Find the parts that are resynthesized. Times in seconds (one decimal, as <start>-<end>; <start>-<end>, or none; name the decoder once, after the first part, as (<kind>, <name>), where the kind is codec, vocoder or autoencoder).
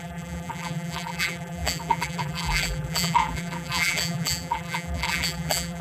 0.0-5.8 (vocoder, BigVGAN v2)